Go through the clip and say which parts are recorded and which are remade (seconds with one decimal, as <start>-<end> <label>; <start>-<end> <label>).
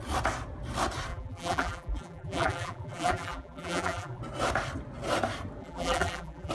0.0-1.1 recorded; 1.1-4.2 remade; 4.2-5.6 recorded; 5.6-6.5 remade